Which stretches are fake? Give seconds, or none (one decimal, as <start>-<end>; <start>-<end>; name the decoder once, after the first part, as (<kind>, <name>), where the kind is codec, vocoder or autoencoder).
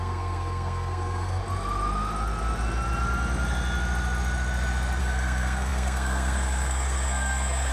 0.0-1.4 (codec, SNAC); 5.0-7.7